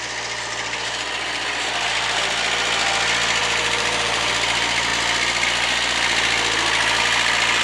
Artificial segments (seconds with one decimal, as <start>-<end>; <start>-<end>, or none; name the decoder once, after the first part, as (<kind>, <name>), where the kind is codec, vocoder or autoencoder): 3.4-4.3 (vocoder, BigVGAN v2)